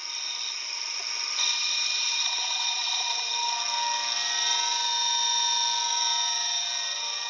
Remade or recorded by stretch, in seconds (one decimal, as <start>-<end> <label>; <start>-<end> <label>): 0.0-1.6 recorded; 1.6-3.3 remade; 3.3-5.9 recorded; 5.9-7.3 remade

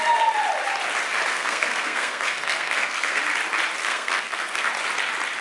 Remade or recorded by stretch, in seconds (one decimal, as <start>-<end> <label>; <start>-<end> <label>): 0.0-1.3 recorded; 1.3-3.2 remade; 3.2-3.8 recorded; 3.8-4.7 remade; 4.7-5.4 recorded

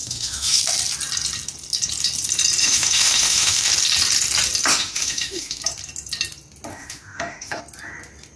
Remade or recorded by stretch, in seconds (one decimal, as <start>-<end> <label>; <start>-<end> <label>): 0.0-0.6 remade; 0.6-2.6 recorded; 2.6-3.7 remade; 3.7-4.7 recorded; 4.7-5.6 remade; 5.6-6.7 recorded; 6.7-7.6 remade; 7.6-8.4 recorded

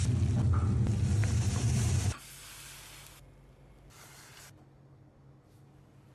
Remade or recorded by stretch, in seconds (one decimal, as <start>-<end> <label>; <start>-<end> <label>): 0.0-6.1 recorded

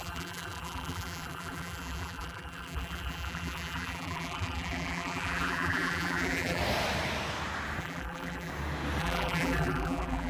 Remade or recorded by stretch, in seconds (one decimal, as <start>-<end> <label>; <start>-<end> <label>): 0.0-6.6 remade; 6.6-7.8 recorded; 7.8-8.5 remade; 8.5-9.0 recorded; 9.0-10.3 remade

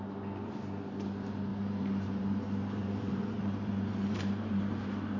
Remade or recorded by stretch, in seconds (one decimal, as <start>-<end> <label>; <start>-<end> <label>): 0.0-1.5 recorded; 1.5-4.6 remade; 4.6-5.2 recorded